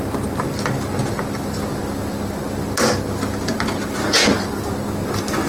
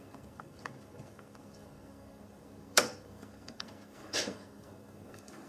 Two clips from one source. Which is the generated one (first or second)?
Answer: second